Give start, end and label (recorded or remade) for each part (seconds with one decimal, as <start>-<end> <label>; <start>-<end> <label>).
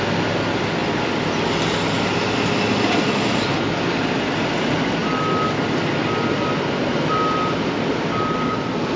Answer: 0.0-9.0 recorded